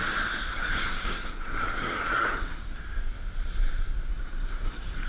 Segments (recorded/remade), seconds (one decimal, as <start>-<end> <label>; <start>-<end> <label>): 0.0-0.5 recorded; 0.5-2.8 remade; 2.8-4.1 recorded; 4.1-5.1 remade